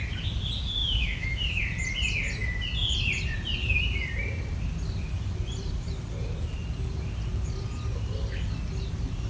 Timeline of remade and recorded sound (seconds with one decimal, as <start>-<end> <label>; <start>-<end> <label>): 0.0-0.8 recorded; 0.8-1.6 remade; 1.6-9.3 recorded